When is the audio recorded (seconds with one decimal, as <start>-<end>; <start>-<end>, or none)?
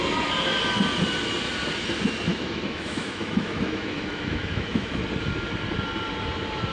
0.0-2.3; 4.9-6.7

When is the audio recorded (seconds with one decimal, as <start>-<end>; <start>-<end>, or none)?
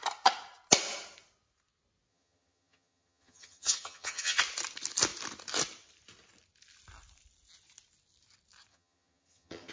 0.0-2.1; 4.4-8.7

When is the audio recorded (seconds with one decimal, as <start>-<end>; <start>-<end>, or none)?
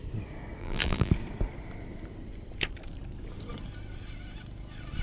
0.0-0.6; 1.1-5.0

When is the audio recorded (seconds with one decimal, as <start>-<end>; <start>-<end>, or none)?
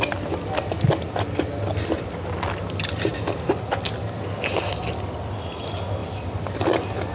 0.0-7.1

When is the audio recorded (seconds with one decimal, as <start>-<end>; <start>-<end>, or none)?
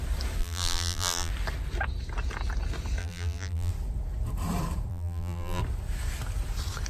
0.0-0.4; 1.3-3.0; 3.7-4.9; 5.6-6.9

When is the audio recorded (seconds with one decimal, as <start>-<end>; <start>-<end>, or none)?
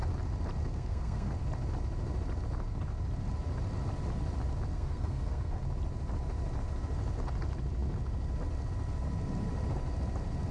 0.0-0.6; 1.3-4.7; 5.6-10.5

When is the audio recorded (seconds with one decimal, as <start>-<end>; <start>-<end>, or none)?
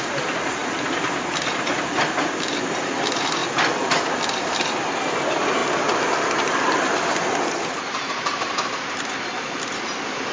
0.0-3.4; 5.1-10.3